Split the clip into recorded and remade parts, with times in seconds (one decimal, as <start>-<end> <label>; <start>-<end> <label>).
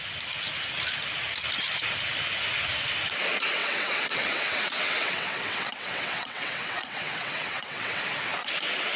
0.0-3.6 recorded; 3.6-8.0 remade; 8.0-9.0 recorded